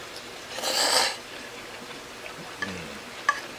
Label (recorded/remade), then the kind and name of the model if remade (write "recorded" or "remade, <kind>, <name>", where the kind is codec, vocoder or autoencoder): recorded